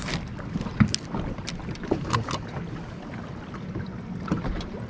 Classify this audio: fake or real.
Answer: real